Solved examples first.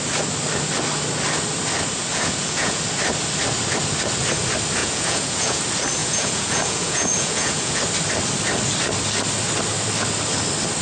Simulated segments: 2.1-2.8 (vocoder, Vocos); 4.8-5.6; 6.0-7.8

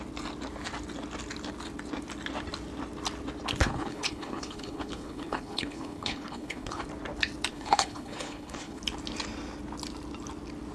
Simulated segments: 3.6-6.8 (codec, HILCodec); 7.5-8.8